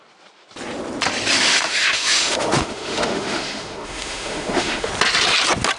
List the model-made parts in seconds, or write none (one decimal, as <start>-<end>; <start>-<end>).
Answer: 1.4-4.9